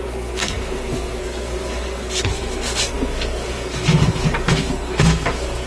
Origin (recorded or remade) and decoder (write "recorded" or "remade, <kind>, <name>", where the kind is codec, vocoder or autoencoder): remade, codec, SNAC